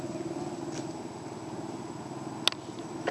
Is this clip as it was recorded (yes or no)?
yes